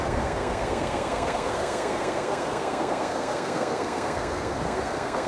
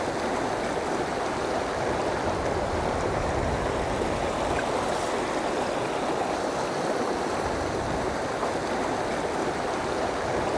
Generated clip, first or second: first